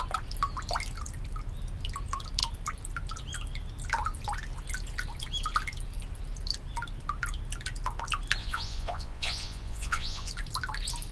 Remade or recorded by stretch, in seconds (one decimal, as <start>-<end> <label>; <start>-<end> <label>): 0.0-8.4 recorded; 8.4-10.3 remade; 10.3-11.1 recorded